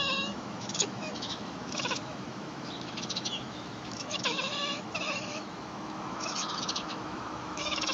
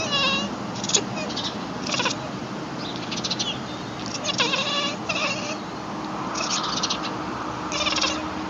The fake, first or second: first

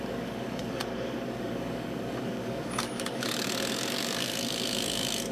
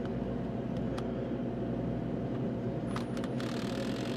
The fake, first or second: first